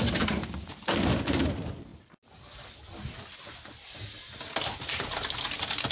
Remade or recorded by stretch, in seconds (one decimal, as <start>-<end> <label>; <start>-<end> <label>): 0.0-5.9 recorded